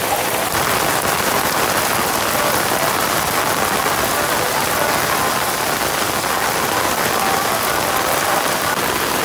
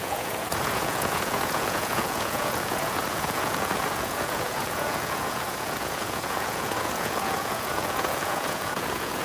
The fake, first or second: second